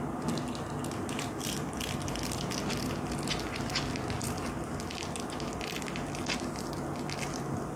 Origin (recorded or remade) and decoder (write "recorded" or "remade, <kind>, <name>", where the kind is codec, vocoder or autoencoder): recorded